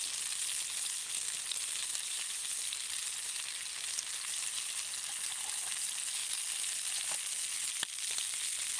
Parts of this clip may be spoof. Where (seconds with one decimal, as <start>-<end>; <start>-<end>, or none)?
1.8-2.4